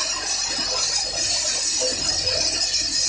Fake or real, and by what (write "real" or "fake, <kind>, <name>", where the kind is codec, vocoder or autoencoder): real